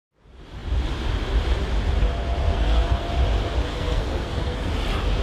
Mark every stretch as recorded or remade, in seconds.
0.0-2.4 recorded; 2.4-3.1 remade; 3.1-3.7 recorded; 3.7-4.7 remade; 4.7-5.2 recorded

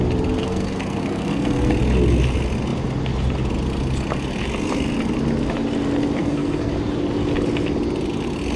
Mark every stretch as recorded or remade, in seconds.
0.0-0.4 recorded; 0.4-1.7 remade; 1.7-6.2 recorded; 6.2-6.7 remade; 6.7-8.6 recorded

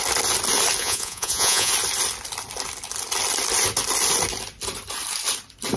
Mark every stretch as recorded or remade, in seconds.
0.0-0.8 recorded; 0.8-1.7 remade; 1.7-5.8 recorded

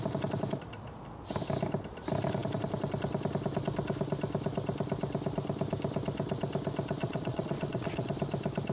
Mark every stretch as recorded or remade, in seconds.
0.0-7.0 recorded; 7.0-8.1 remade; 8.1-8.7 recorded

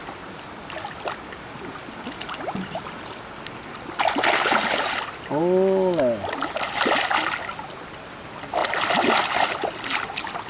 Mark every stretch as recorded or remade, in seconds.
0.0-10.5 recorded

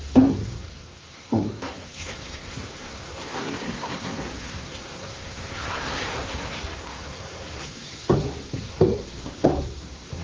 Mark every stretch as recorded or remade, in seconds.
0.0-10.2 remade